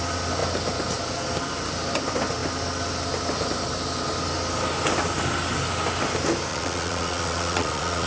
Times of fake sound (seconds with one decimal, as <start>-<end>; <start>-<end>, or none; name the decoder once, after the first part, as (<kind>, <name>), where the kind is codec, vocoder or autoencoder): 6.5-8.1 (vocoder, Vocos)